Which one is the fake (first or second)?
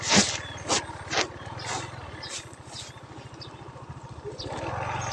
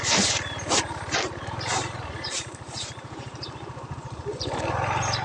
second